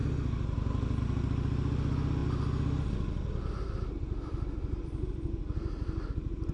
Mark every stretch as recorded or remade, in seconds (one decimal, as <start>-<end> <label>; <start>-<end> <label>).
0.0-6.5 recorded